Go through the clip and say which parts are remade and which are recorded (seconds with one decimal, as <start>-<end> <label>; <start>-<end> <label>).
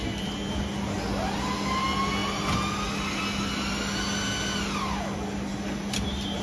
0.0-6.4 recorded